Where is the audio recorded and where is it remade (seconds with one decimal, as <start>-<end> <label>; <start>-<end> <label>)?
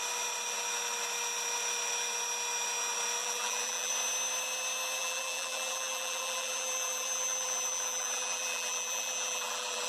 0.0-3.2 recorded; 3.2-3.9 remade; 3.9-5.0 recorded; 5.0-9.9 remade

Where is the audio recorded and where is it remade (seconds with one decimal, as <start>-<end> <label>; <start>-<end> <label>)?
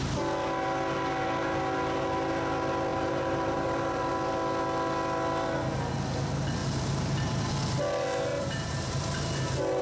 0.0-2.9 recorded; 2.9-4.1 remade; 4.1-6.6 recorded; 6.6-7.5 remade; 7.5-8.3 recorded; 8.3-8.9 remade; 8.9-9.8 recorded